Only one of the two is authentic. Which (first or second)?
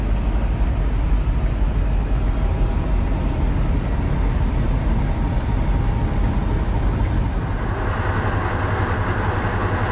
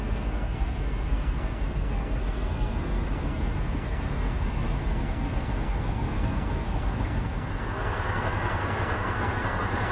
first